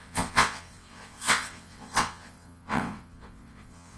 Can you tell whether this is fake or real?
fake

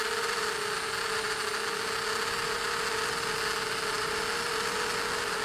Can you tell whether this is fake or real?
real